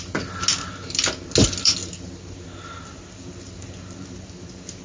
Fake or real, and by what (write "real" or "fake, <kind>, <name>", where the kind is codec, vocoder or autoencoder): real